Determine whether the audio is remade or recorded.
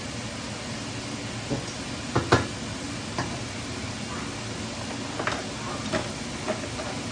recorded